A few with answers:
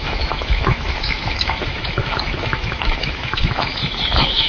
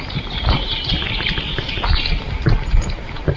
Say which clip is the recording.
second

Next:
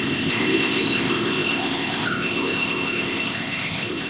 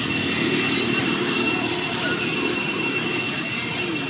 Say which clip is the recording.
second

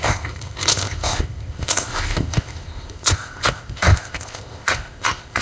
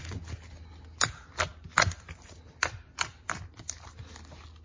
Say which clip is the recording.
second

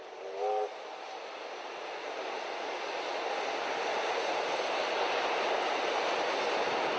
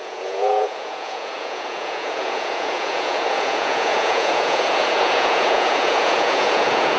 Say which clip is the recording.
first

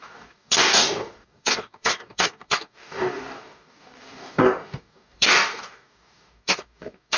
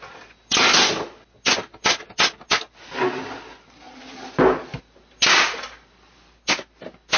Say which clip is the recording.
second